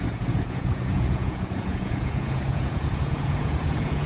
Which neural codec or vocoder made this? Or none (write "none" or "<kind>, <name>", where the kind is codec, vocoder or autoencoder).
vocoder, Vocos